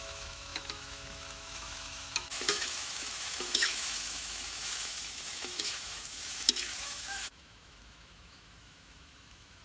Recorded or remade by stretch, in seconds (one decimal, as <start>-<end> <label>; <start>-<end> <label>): 0.0-9.6 remade